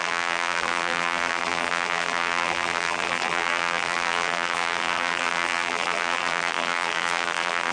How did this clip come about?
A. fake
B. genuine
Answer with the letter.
A